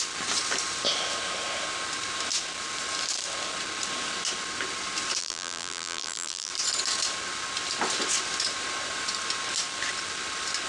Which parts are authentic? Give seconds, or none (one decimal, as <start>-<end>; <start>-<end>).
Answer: 0.0-5.2; 6.5-10.7